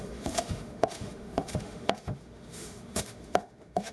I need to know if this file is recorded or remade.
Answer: remade